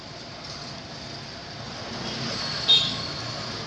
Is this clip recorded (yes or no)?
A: yes